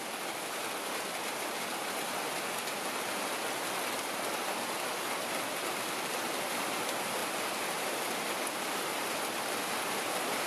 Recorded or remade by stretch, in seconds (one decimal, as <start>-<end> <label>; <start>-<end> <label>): 0.0-10.5 remade